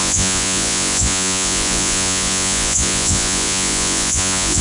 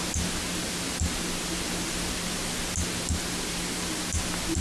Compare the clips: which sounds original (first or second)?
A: second